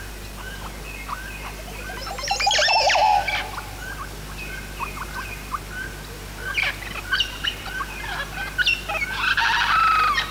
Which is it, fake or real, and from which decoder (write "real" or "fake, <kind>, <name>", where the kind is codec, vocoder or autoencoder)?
real